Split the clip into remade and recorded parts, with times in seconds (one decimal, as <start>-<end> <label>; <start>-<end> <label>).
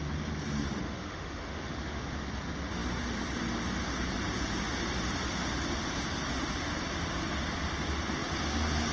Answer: 0.0-0.8 recorded; 0.8-2.0 remade; 2.0-8.9 recorded